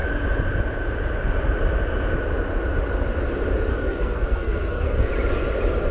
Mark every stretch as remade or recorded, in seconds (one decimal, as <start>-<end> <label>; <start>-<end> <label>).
0.0-3.7 recorded; 3.7-5.1 remade; 5.1-5.9 recorded